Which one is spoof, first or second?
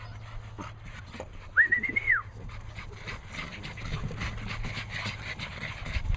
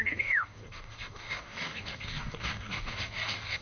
second